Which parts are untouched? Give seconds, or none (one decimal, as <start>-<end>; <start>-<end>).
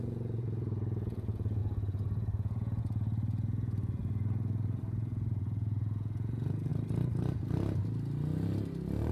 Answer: 6.7-9.1